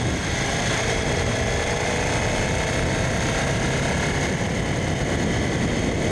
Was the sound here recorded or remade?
recorded